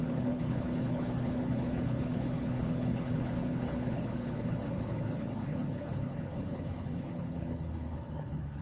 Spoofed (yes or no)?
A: yes